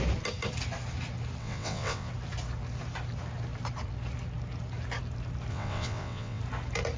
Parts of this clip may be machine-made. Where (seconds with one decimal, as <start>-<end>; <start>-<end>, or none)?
1.4-2.1; 5.5-6.4

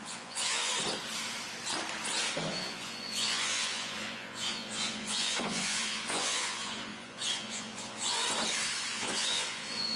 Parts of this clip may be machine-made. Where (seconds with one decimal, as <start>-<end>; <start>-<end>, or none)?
0.0-0.7; 2.5-8.2; 8.9-10.0

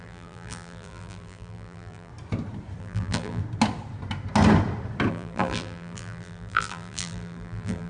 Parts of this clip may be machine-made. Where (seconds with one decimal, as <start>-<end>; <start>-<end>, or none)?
0.0-2.1; 2.8-3.4; 5.1-7.9

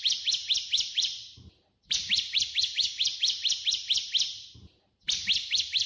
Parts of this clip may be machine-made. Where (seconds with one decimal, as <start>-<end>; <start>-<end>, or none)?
0.0-5.9

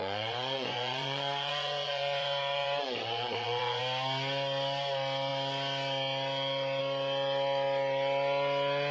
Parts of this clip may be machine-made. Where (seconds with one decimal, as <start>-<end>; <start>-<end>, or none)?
0.0-3.8

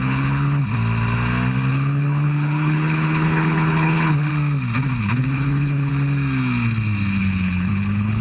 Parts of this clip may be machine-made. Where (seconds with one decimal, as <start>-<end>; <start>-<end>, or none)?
0.0-0.6; 1.7-4.3; 5.0-5.9; 7.2-8.2